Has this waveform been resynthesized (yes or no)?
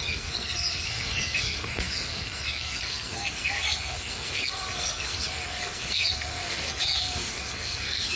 yes